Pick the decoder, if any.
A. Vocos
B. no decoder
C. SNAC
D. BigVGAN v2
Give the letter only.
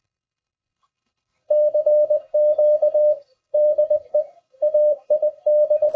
C